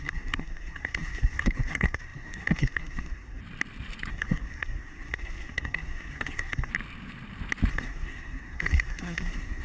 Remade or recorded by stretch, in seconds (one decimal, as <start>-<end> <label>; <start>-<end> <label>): 0.0-3.4 remade; 3.4-4.1 recorded; 4.1-6.7 remade; 6.7-7.7 recorded; 7.7-9.6 remade